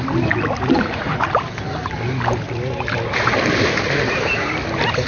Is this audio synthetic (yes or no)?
no